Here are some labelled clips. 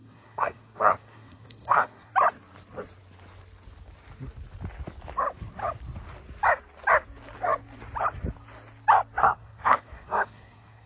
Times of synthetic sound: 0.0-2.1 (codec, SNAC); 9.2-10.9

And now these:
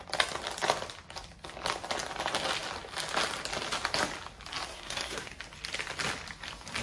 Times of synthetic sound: 4.7-5.4 (codec, SNAC)

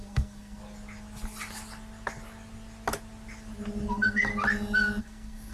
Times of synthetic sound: 0.0-0.6 (codec, SNAC); 3.9-4.3; 5.0-5.5